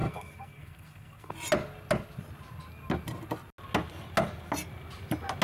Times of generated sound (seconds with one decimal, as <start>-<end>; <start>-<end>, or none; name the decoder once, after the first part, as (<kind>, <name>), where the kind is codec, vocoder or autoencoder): 0.0-1.3 (codec, SNAC)